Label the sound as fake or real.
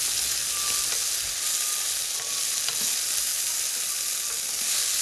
real